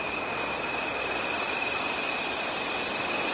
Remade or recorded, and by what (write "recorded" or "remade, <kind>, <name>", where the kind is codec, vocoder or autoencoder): recorded